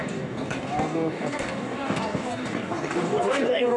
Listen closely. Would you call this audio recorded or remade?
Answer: remade